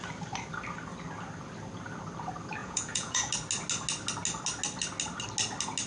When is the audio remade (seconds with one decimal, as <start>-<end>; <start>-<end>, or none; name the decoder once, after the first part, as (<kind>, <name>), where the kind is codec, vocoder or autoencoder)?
2.6-3.3 (vocoder, Vocos)